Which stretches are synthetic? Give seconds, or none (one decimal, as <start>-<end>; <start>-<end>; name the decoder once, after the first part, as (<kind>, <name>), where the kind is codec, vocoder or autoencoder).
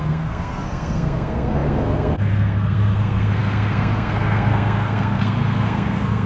0.0-6.3 (codec, SNAC)